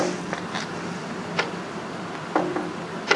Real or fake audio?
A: real